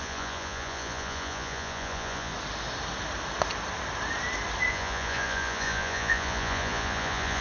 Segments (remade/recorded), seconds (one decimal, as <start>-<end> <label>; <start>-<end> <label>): 0.0-2.3 remade; 2.3-4.7 recorded; 4.7-7.4 remade